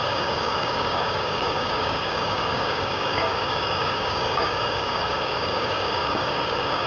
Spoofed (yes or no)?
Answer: yes